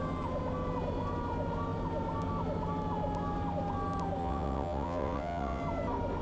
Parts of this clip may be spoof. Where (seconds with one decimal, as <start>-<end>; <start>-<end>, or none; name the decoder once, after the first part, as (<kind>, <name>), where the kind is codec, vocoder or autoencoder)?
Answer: 4.2-5.6 (vocoder, WaveNeXt)